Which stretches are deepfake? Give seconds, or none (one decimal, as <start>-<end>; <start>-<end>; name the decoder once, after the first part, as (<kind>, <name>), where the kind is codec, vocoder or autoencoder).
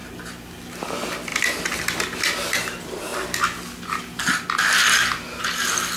none